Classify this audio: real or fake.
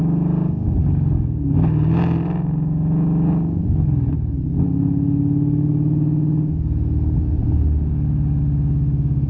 real